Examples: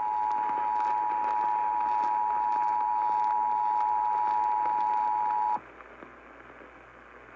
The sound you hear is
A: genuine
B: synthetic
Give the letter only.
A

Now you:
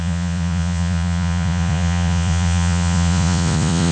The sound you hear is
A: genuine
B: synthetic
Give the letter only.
B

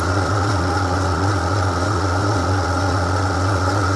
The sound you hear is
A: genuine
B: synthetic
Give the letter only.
B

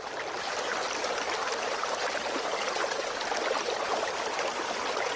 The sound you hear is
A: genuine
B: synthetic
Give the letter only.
A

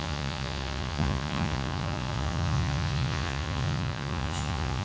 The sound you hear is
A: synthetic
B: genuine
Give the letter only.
A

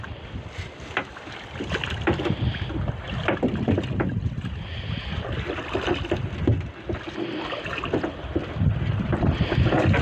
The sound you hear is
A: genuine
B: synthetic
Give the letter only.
A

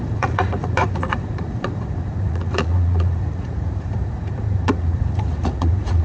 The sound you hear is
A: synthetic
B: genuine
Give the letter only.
A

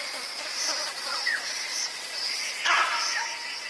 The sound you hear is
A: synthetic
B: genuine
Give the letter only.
A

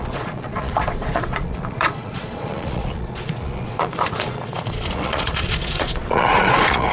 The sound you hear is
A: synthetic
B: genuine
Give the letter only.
A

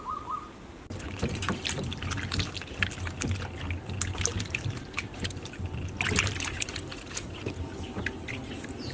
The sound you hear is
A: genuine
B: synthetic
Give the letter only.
A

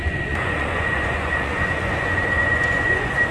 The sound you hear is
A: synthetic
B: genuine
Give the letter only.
A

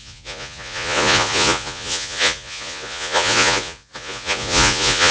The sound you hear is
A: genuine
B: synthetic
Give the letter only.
B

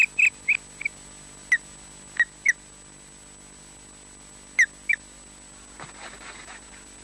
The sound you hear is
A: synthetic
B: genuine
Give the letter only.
B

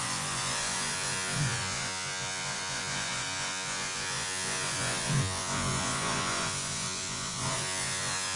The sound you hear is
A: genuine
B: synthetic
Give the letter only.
B